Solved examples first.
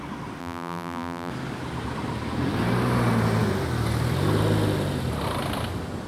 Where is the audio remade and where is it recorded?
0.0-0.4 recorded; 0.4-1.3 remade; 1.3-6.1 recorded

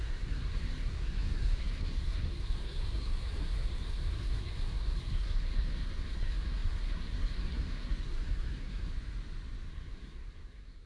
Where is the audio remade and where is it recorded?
0.0-8.9 remade; 8.9-9.7 recorded; 9.7-10.9 remade

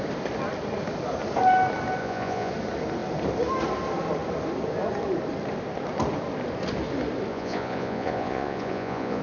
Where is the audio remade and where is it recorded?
0.0-2.0 recorded; 2.0-2.5 remade; 2.5-7.3 recorded; 7.3-9.2 remade

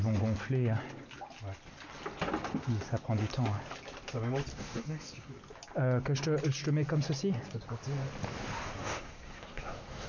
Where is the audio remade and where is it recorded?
0.0-4.5 recorded; 4.5-5.3 remade; 5.3-8.8 recorded; 8.8-10.1 remade

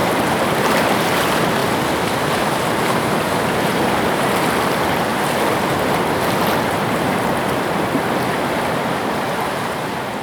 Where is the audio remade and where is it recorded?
0.0-0.5 recorded; 0.5-1.6 remade; 1.6-2.2 recorded; 2.2-5.1 remade; 5.1-6.8 recorded; 6.8-10.2 remade